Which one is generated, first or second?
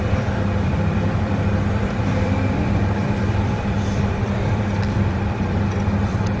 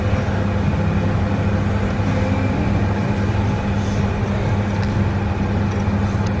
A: first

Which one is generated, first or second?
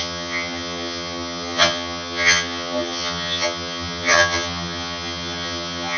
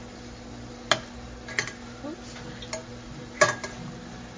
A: first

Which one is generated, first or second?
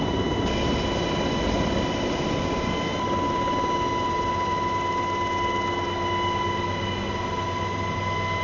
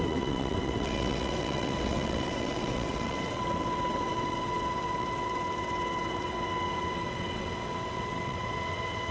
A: second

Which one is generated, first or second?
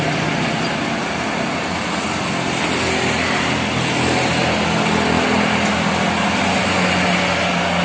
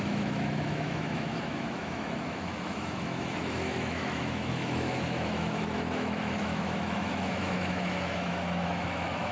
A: second